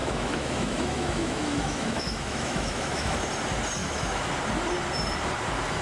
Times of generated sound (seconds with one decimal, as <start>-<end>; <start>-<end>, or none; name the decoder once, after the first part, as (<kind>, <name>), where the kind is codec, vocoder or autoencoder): 0.0-3.3 (autoencoder, DAC-VAE); 3.8-4.3